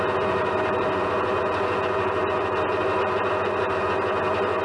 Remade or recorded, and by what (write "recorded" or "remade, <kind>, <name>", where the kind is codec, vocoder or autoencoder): recorded